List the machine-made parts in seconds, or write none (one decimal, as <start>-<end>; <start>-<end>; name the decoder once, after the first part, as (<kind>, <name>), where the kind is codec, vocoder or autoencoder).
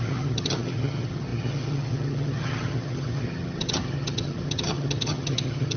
0.0-5.8 (vocoder, HiFi-GAN)